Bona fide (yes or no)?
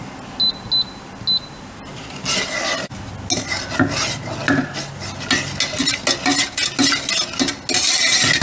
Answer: yes